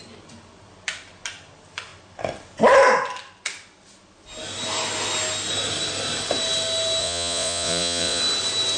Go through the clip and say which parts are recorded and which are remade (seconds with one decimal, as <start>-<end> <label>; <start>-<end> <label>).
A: 0.0-7.0 recorded; 7.0-8.2 remade; 8.2-8.8 recorded